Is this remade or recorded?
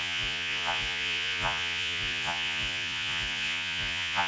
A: remade